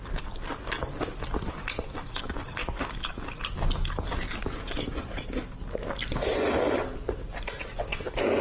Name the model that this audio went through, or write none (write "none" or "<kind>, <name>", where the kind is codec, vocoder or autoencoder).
none